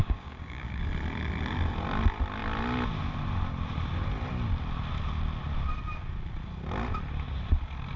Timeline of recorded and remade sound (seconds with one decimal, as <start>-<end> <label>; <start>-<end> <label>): 0.0-0.8 remade; 0.8-8.0 recorded